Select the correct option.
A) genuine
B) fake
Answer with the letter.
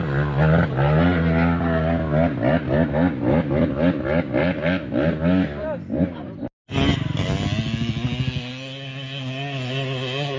A